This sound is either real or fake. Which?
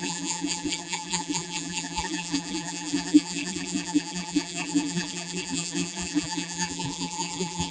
fake